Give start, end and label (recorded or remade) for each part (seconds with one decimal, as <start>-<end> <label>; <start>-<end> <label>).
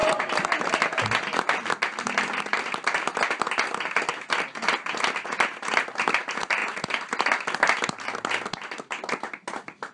0.0-0.7 remade; 0.7-9.9 recorded